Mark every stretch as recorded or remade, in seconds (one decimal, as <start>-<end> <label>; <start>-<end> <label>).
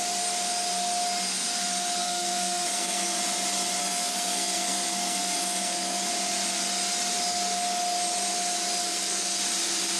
0.0-2.0 recorded; 2.0-3.2 remade; 3.2-3.8 recorded; 3.8-6.1 remade; 6.1-8.8 recorded; 8.8-9.4 remade; 9.4-10.0 recorded